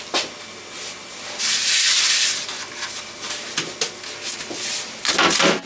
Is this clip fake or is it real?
real